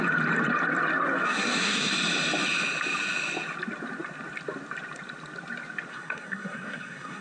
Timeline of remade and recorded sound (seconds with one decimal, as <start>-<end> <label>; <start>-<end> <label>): 0.0-1.2 recorded; 1.2-1.9 remade; 1.9-5.9 recorded; 5.9-7.2 remade